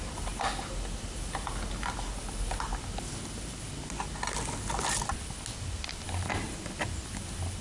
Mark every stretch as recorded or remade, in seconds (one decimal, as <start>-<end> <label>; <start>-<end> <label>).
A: 0.0-2.7 remade; 2.7-6.0 recorded; 6.0-7.6 remade